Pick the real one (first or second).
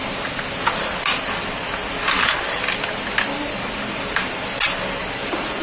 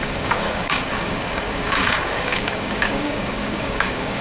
first